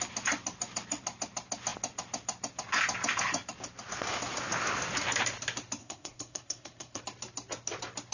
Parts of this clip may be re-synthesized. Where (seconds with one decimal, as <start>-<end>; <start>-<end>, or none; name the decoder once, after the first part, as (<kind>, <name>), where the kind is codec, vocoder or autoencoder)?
5.8-7.0 (codec, SNAC)